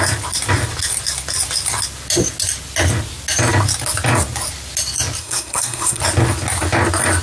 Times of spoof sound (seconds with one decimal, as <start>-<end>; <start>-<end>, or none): 5.2-6.0

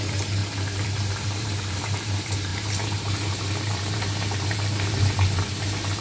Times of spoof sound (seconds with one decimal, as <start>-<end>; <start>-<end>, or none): 0.0-6.0